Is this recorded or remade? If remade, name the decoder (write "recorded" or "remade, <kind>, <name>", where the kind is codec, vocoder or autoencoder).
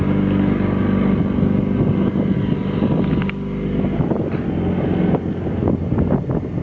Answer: recorded